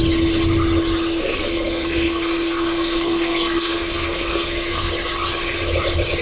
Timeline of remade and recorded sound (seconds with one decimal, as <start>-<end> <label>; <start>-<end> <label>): 0.0-1.2 recorded; 1.2-4.9 remade; 4.9-6.2 recorded

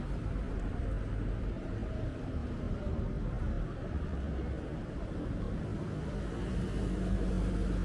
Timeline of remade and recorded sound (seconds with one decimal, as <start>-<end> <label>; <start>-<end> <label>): 0.0-3.8 recorded; 3.8-4.4 remade; 4.4-7.8 recorded